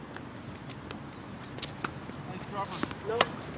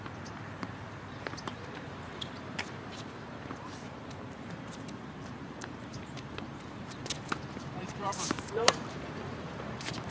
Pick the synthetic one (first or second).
second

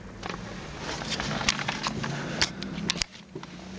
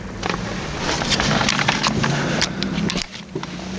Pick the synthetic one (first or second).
second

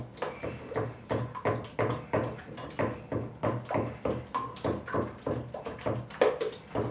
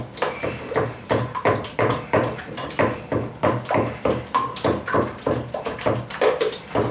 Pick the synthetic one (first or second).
second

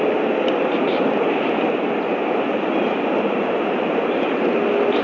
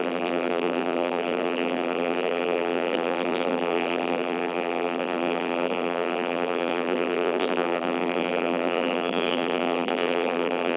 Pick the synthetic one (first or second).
second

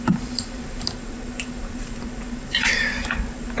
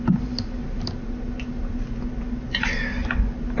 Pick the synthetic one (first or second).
first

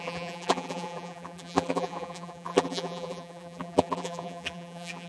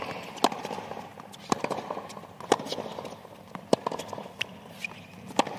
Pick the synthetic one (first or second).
first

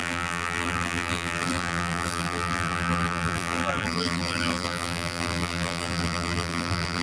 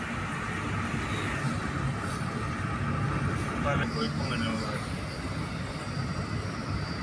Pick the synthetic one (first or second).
first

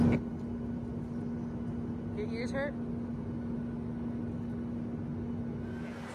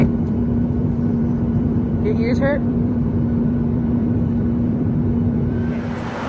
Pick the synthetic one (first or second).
second